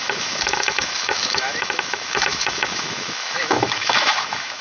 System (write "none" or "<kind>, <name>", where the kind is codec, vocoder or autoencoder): autoencoder, DAC-VAE